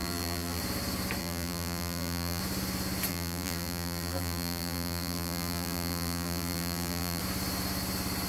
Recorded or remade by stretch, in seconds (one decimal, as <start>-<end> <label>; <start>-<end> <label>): 0.0-0.6 remade; 0.6-1.2 recorded; 1.2-2.4 remade; 2.4-3.1 recorded; 3.1-7.2 remade; 7.2-8.3 recorded